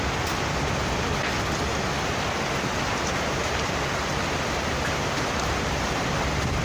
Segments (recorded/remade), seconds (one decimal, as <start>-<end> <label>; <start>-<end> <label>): 0.0-6.6 recorded